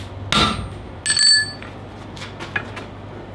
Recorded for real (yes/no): yes